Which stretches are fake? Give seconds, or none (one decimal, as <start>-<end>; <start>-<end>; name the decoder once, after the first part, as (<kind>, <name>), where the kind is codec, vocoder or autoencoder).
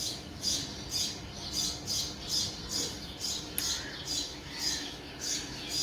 0.0-0.6 (autoencoder, DAC-VAE); 4.1-5.8